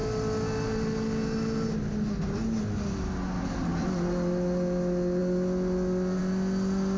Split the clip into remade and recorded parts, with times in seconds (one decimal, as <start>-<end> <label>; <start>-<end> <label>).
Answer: 0.0-7.0 recorded